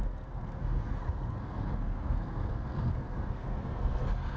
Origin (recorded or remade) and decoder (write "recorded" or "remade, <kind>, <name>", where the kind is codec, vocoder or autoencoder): remade, codec, SNAC